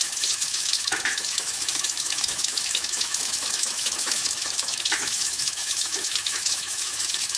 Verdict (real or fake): fake